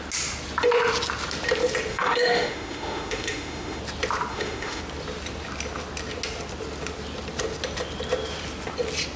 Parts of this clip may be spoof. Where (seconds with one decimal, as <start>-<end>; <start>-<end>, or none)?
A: 1.9-3.8; 4.3-4.8